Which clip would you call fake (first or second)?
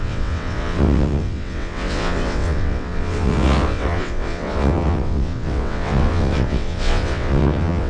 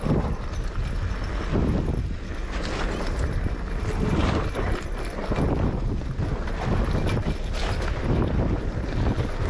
first